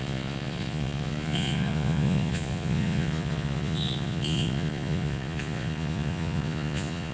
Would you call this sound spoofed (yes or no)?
yes